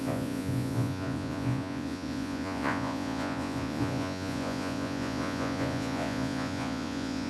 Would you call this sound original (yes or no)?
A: no